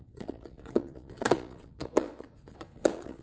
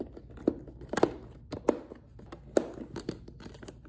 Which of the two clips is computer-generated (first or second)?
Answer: first